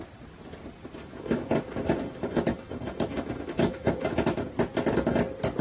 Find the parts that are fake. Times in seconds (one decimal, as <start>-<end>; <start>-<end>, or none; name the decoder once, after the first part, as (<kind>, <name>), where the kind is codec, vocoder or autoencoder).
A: 1.0-4.4 (autoencoder, DAC-VAE)